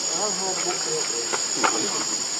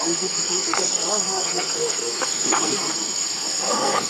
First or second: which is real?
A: first